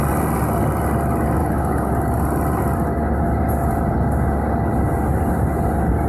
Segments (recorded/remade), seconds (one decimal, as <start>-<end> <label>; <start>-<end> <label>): 0.0-1.4 recorded; 1.4-1.9 remade; 1.9-6.1 recorded